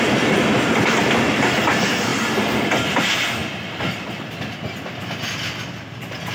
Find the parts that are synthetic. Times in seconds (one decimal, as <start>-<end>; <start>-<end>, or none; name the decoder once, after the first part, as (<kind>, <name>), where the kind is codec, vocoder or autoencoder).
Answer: none